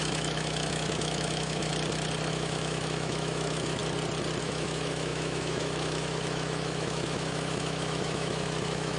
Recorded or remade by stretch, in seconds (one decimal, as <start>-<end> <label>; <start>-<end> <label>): 0.0-1.7 remade; 1.7-2.3 recorded; 2.3-3.8 remade; 3.8-4.4 recorded; 4.4-9.0 remade